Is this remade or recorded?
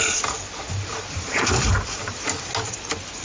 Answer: recorded